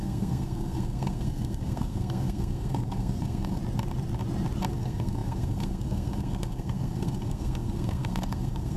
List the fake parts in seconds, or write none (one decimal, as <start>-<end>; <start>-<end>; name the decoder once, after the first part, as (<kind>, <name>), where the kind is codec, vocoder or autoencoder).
0.0-3.6 (codec, SNAC); 4.7-8.8